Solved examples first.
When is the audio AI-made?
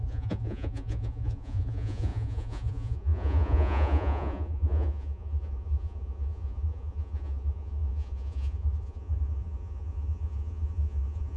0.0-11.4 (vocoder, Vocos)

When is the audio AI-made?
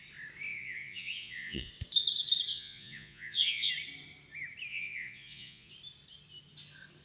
0.5-1.7 (vocoder, Vocos); 2.5-3.7; 4.7-5.7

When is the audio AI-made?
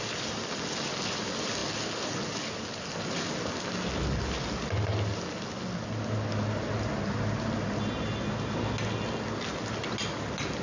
none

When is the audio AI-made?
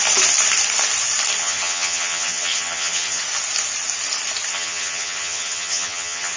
1.4-3.2 (vocoder, HiFi-GAN); 4.5-6.4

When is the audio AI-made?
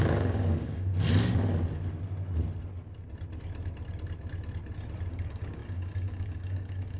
0.0-0.9 (codec, DAC); 5.1-7.0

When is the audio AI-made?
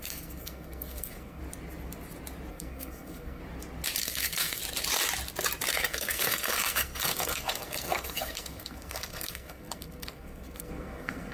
0.0-1.4 (codec, SNAC); 2.5-3.4; 4.0-4.6; 5.7-11.3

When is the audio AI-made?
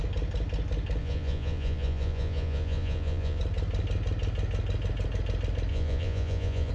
1.0-3.4 (vocoder, Vocos); 5.7-6.7